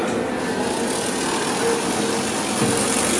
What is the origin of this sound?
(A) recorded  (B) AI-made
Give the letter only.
A